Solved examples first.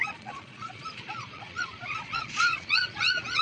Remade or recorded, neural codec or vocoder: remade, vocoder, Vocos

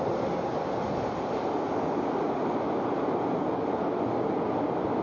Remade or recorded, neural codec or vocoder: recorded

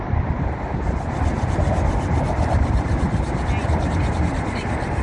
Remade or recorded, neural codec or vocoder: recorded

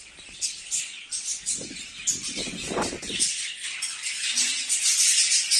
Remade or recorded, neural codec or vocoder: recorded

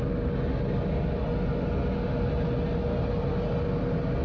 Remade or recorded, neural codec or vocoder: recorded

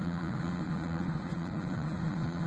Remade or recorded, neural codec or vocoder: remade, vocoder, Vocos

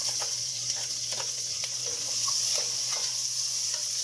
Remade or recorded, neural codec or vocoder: remade, vocoder, Vocos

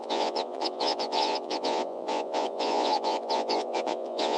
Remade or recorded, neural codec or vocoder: remade, vocoder, Vocos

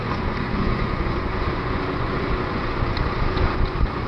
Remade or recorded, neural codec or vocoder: remade, vocoder, Vocos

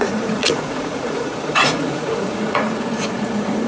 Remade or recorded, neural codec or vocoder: remade, vocoder, Vocos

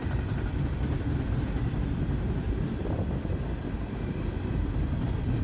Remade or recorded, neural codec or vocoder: recorded